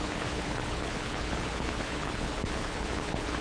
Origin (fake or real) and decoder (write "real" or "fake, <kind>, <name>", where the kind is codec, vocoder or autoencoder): fake, codec, HILCodec